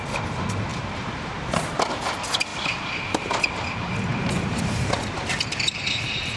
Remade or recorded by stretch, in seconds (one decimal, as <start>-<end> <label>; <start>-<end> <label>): 0.0-0.7 recorded; 0.7-1.3 remade; 1.3-2.5 recorded; 2.5-3.3 remade; 3.3-4.1 recorded; 4.1-4.9 remade; 4.9-6.4 recorded